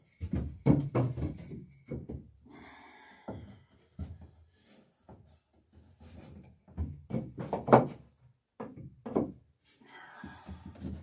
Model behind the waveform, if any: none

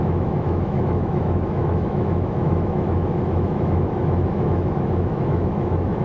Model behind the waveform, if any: autoencoder, DAC-VAE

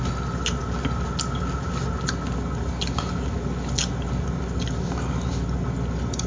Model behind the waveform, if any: none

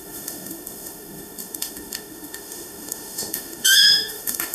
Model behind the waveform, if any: autoencoder, DAC-VAE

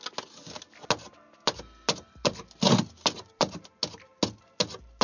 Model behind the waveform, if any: none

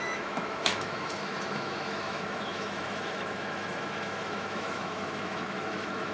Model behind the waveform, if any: autoencoder, DAC-VAE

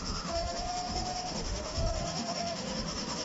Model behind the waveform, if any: autoencoder, DAC-VAE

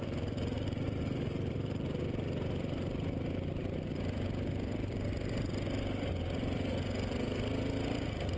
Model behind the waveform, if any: none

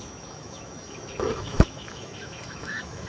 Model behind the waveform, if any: autoencoder, DAC-VAE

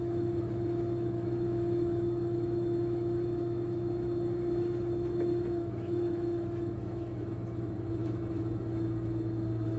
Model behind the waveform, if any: autoencoder, DAC-VAE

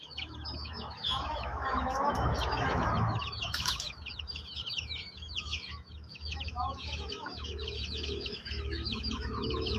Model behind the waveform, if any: autoencoder, DAC-VAE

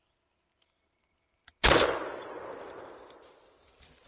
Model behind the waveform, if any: none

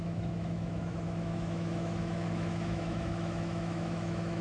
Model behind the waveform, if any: autoencoder, DAC-VAE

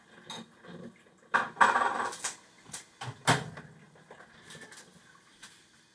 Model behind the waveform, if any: none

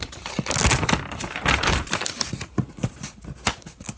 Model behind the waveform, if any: none